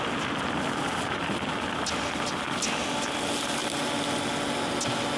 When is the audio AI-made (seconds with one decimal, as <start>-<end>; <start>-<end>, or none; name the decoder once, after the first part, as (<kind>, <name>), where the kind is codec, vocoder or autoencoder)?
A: none